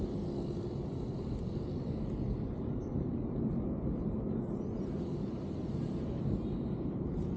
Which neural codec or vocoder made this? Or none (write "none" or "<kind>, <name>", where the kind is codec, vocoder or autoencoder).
none